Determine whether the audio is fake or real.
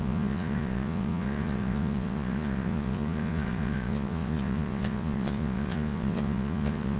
fake